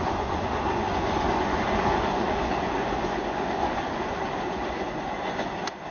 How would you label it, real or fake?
fake